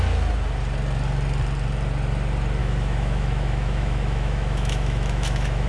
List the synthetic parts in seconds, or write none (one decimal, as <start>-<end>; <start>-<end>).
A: 2.6-5.7